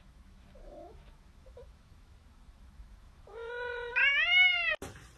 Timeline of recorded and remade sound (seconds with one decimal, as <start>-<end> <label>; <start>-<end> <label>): 0.0-4.0 remade; 4.0-5.2 recorded